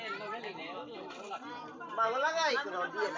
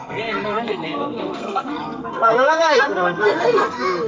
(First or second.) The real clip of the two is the first